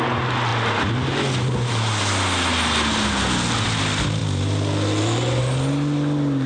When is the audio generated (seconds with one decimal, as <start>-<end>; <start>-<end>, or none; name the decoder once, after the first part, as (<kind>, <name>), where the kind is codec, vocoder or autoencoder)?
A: none